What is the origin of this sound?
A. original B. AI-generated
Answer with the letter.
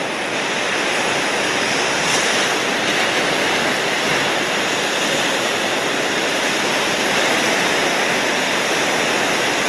A